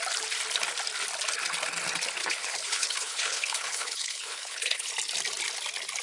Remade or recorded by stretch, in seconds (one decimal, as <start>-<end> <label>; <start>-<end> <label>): 0.0-2.2 recorded; 2.2-4.9 remade; 4.9-6.0 recorded

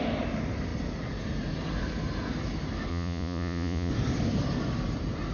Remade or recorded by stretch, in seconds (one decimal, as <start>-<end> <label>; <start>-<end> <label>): 0.0-2.9 recorded; 2.9-3.9 remade; 3.9-5.3 recorded

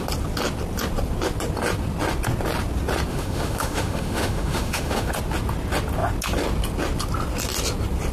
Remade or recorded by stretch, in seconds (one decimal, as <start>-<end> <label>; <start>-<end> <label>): 0.0-3.1 recorded; 3.1-5.1 remade; 5.1-8.1 recorded

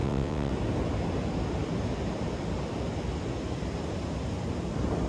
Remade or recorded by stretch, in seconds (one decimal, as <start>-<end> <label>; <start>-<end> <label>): 0.0-0.5 remade; 0.5-5.1 recorded

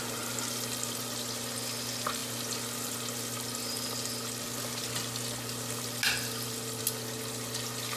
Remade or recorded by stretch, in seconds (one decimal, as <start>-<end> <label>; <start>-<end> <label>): 0.0-8.0 recorded

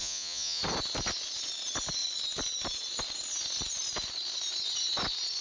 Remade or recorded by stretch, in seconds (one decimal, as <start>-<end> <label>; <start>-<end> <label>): 0.0-0.6 remade; 0.6-5.4 recorded

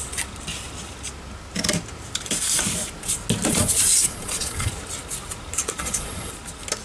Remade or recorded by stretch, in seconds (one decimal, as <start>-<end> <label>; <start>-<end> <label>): 0.0-3.5 recorded; 3.5-4.7 remade; 4.7-5.8 recorded; 5.8-6.3 remade; 6.3-6.8 recorded